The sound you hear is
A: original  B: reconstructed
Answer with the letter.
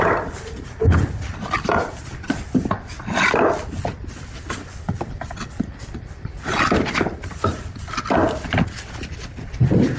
A